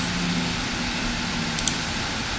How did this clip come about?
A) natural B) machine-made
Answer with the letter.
A